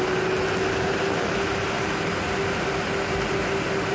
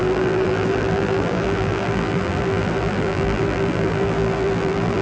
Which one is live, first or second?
first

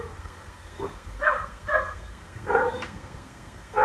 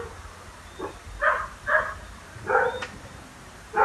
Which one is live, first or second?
second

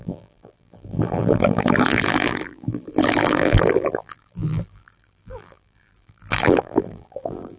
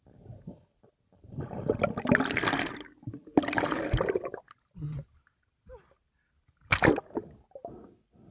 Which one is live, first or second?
second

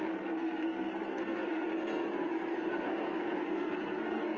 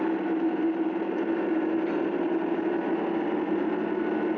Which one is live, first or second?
second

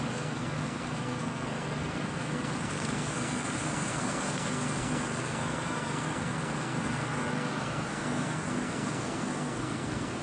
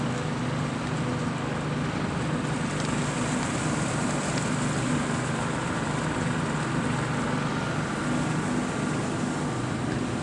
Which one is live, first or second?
second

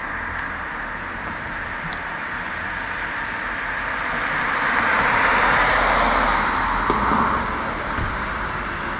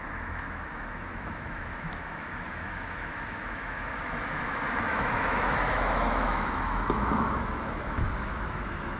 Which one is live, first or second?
first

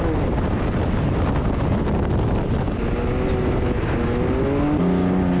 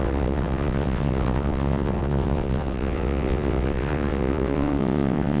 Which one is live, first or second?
first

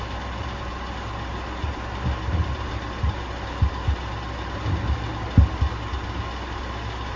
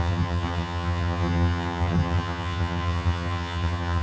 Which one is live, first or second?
first